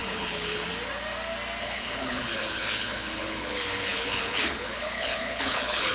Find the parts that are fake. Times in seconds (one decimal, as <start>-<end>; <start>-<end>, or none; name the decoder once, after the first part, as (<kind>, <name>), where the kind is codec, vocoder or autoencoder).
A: 0.0-0.7 (codec, HILCodec); 1.6-5.9